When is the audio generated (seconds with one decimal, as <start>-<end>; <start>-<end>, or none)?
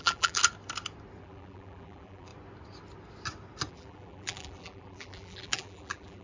0.0-0.4; 1.2-2.3; 3.7-6.2